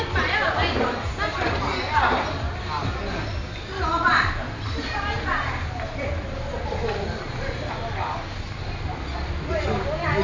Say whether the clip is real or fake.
real